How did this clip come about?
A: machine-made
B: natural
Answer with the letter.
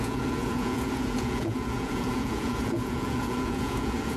A